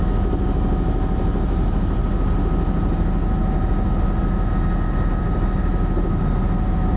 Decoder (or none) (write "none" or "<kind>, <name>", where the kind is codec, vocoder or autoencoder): none